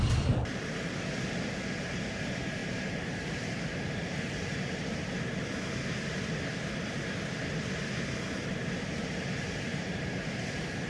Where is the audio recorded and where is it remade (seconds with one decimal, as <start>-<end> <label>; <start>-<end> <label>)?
0.0-2.6 recorded; 2.6-5.1 remade; 5.1-9.7 recorded; 9.7-10.3 remade; 10.3-10.9 recorded